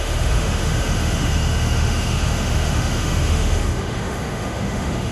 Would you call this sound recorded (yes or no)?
no